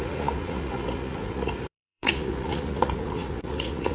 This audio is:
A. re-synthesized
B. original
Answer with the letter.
A